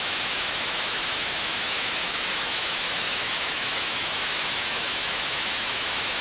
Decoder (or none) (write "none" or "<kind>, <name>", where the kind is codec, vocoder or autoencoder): autoencoder, DAC-VAE